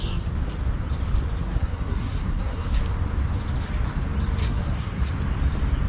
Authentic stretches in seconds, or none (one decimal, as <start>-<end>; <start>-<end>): 0.0-1.4; 2.8-4.4; 5.1-5.9